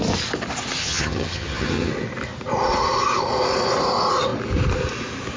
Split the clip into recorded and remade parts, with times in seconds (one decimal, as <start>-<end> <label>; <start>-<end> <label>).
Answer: 0.0-0.8 recorded; 0.8-1.9 remade; 1.9-5.4 recorded